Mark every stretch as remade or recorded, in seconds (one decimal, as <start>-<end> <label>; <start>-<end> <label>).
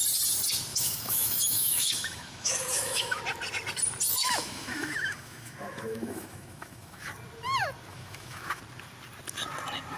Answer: 0.0-0.7 recorded; 0.7-3.2 remade; 3.2-4.1 recorded; 4.1-7.1 remade; 7.1-7.9 recorded; 7.9-8.6 remade; 8.6-10.0 recorded